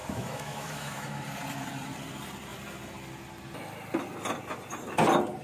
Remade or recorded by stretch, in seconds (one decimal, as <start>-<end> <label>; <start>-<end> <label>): 0.0-1.2 remade; 1.2-5.4 recorded